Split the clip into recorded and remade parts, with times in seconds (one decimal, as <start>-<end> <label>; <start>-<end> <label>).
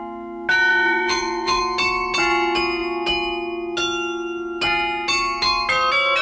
0.0-0.7 recorded; 0.7-1.6 remade; 1.6-6.2 recorded